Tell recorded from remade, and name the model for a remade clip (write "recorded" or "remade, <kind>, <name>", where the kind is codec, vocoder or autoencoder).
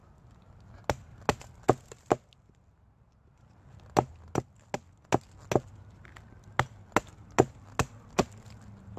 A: recorded